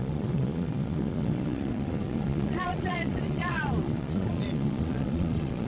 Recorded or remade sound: remade